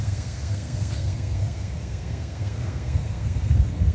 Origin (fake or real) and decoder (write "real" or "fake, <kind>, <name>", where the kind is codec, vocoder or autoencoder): fake, codec, SNAC